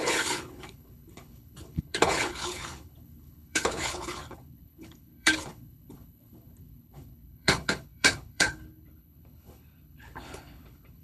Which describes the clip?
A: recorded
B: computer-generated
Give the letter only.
B